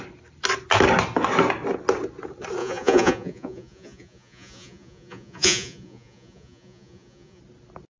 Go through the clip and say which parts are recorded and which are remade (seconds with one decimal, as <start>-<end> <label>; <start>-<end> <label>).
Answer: 0.0-2.6 recorded; 2.6-7.4 remade; 7.4-8.0 recorded